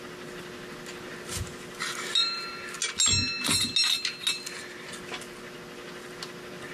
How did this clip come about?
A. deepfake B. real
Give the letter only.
B